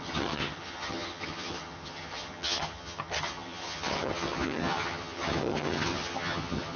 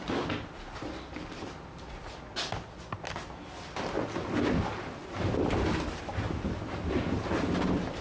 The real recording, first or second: second